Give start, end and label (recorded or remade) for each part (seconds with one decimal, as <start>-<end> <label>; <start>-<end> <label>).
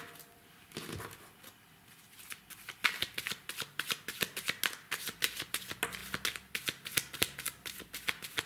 0.0-8.5 recorded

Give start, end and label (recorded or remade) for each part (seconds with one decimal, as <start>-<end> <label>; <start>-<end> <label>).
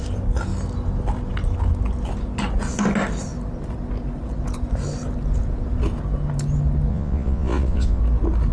0.0-6.9 recorded; 6.9-8.0 remade; 8.0-8.5 recorded